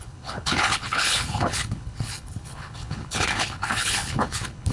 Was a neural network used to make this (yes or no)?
yes